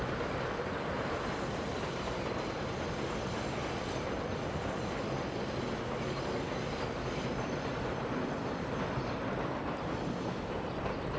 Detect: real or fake real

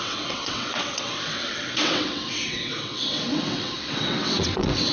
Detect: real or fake fake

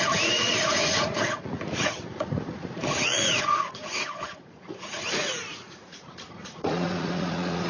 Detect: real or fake fake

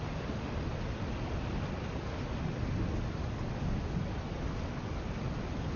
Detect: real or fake real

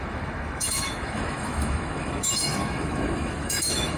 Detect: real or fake fake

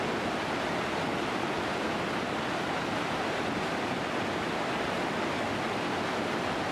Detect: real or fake real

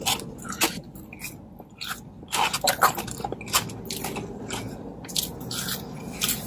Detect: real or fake real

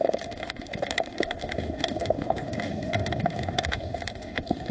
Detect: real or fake fake